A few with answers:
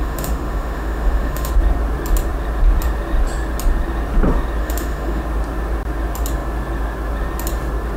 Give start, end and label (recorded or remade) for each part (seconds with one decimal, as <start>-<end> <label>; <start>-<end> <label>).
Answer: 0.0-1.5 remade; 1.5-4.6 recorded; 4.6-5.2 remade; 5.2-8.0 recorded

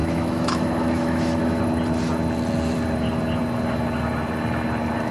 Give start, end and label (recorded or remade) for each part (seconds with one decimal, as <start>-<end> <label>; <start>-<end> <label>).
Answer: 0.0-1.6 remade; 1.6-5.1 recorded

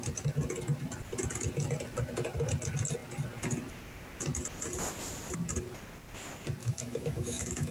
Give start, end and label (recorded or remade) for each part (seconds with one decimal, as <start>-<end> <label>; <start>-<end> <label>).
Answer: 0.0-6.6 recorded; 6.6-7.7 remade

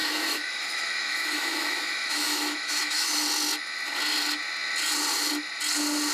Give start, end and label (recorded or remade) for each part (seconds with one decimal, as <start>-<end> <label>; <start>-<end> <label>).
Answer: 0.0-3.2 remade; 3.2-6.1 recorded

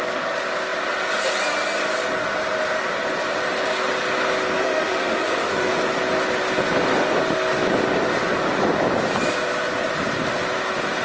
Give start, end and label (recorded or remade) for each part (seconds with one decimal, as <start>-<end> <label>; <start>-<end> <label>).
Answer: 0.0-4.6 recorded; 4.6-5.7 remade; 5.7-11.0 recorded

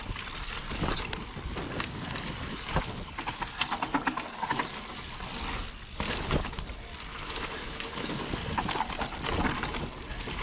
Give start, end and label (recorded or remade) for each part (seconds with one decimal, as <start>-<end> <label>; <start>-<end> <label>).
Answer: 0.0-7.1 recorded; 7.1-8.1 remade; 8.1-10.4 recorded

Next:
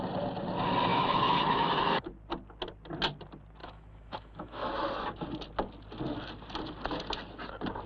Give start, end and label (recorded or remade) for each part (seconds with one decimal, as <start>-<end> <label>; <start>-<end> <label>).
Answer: 0.0-0.9 recorded; 0.9-2.1 remade; 2.1-3.6 recorded; 3.6-4.7 remade; 4.7-7.9 recorded

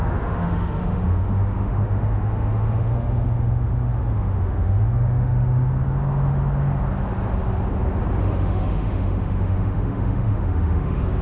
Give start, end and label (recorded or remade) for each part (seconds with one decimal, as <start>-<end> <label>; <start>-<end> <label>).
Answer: 0.0-5.7 remade; 5.7-8.2 recorded; 8.2-11.2 remade